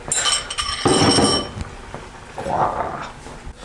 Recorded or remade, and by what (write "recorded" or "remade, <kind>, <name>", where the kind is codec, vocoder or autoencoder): recorded